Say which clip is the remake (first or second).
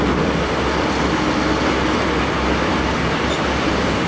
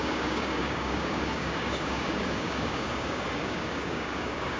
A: second